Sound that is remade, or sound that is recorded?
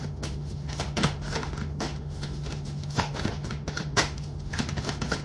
remade